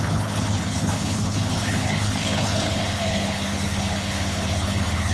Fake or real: fake